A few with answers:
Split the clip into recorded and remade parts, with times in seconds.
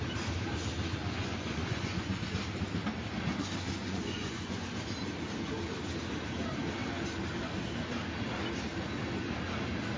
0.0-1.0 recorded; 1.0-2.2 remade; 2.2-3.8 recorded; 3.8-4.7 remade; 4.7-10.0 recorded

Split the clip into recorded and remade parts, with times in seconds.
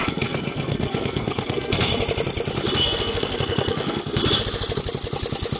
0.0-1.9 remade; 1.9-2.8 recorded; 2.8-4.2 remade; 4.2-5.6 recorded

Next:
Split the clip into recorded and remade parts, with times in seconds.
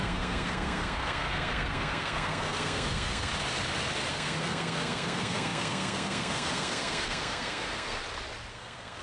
0.0-3.3 remade; 3.3-4.1 recorded; 4.1-8.0 remade; 8.0-8.5 recorded; 8.5-9.0 remade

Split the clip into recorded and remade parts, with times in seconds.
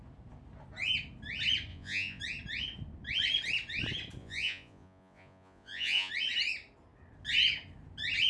0.0-1.7 recorded; 1.7-2.2 remade; 2.2-4.2 recorded; 4.2-6.1 remade; 6.1-8.3 recorded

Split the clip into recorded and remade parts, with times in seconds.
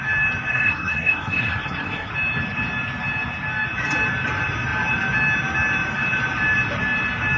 0.0-0.5 recorded; 0.5-2.1 remade; 2.1-7.4 recorded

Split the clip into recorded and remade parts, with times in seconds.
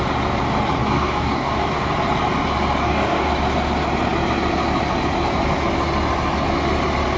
0.0-0.8 recorded; 0.8-1.9 remade; 1.9-2.8 recorded; 2.8-3.3 remade; 3.3-7.2 recorded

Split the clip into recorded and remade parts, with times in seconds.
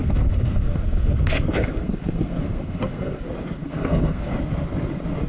0.0-3.2 remade; 3.2-3.6 recorded; 3.6-4.3 remade; 4.3-5.3 recorded